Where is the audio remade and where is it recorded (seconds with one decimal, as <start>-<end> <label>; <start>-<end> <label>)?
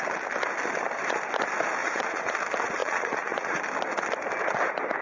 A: 0.0-1.8 recorded; 1.8-2.3 remade; 2.3-2.8 recorded; 2.8-3.6 remade; 3.6-5.0 recorded